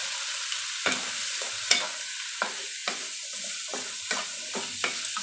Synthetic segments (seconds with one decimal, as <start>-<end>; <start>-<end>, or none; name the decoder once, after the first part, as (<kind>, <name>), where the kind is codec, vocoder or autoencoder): none